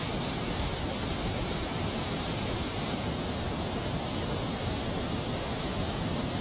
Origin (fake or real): real